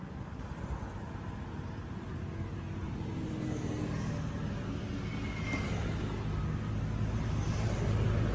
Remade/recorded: recorded